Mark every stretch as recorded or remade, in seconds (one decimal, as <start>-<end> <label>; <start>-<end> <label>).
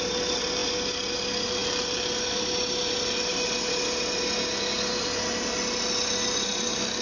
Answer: 0.0-7.0 recorded